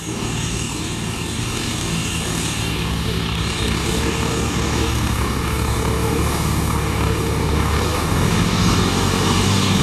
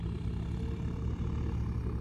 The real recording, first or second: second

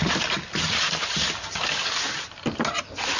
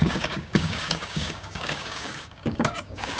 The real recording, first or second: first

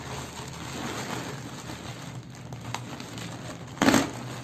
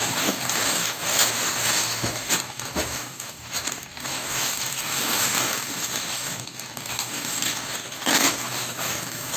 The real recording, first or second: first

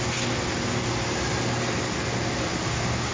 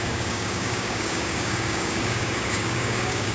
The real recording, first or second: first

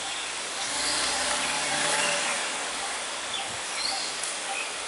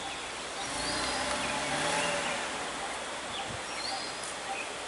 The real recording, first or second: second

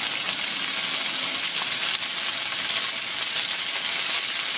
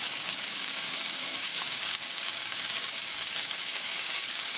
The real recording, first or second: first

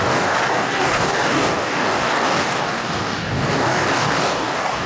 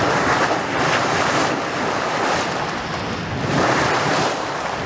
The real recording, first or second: second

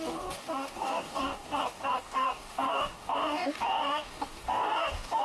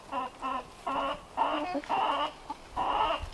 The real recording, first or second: second